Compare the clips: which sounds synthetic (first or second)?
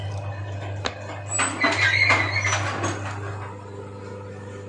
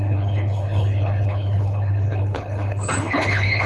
second